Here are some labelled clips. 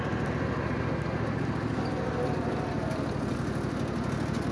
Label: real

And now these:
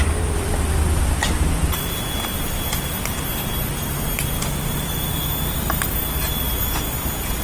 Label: real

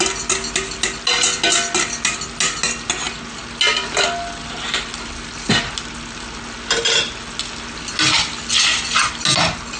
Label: real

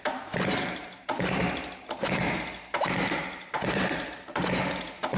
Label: fake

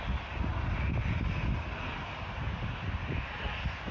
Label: real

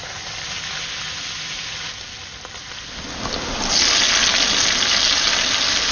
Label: real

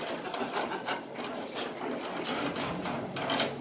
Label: real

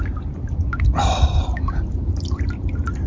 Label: real